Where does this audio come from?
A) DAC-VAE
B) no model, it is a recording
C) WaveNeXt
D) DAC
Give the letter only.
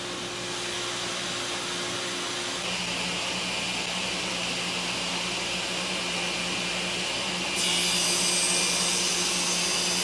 B